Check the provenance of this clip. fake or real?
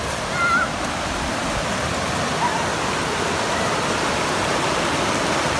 real